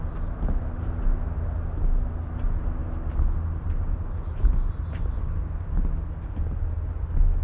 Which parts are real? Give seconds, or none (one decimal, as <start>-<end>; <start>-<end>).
0.0-7.4